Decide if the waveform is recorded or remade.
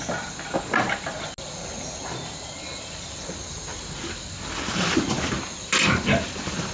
recorded